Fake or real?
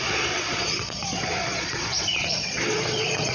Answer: fake